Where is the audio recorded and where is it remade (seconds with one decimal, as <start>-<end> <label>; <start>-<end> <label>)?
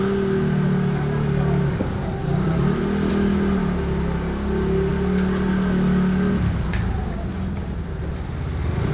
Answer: 0.0-8.9 recorded